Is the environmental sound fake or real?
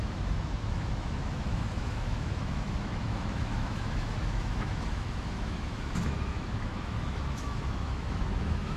fake